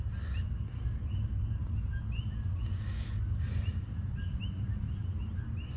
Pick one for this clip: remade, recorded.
recorded